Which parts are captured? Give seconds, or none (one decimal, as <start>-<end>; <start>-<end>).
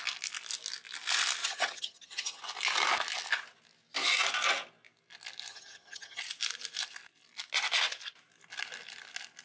0.0-1.4; 2.4-5.5; 6.2-9.4